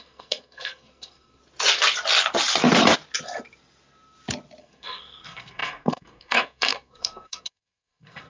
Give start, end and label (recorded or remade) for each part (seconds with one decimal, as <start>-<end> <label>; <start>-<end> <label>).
0.0-1.4 remade; 1.4-4.6 recorded; 4.6-8.3 remade